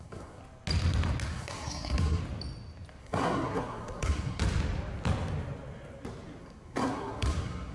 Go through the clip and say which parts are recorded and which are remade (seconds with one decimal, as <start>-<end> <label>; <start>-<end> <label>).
0.0-0.4 remade; 0.4-1.3 recorded; 1.3-2.2 remade; 2.2-3.0 recorded; 3.0-4.4 remade; 4.4-6.4 recorded; 6.4-7.7 remade